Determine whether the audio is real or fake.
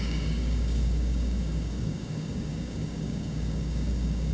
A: fake